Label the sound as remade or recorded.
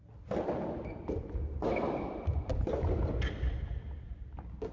recorded